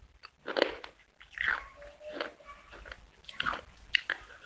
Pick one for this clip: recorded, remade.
recorded